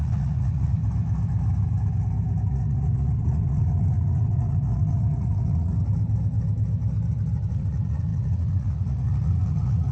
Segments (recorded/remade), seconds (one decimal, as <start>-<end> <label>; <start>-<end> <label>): 0.0-0.8 remade; 0.8-2.5 recorded; 2.5-5.7 remade; 5.7-7.5 recorded; 7.5-9.9 remade